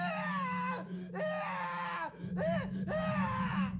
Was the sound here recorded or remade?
remade